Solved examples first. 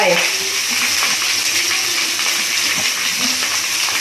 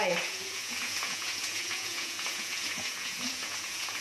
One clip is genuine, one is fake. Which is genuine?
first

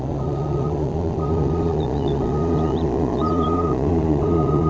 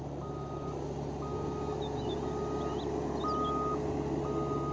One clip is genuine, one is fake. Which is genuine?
second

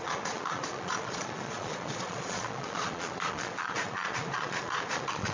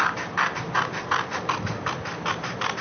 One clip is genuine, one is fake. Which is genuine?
second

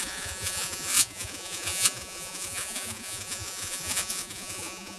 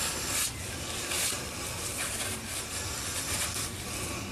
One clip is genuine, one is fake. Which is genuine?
second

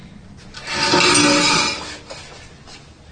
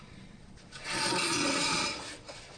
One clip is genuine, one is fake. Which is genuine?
first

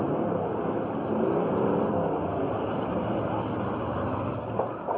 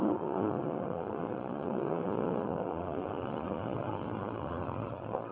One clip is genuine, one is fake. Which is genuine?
first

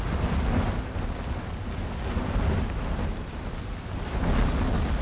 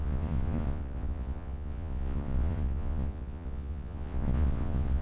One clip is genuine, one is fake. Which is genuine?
first